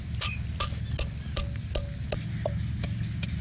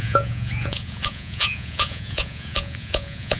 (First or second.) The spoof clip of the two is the second